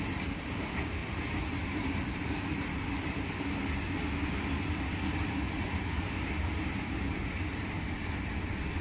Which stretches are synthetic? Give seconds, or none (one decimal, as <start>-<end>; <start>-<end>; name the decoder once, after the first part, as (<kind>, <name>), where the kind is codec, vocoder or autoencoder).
none